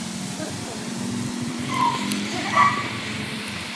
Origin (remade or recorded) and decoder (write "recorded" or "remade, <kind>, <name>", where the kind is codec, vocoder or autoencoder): remade, vocoder, BigVGAN v2